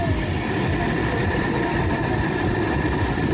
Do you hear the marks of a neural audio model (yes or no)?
no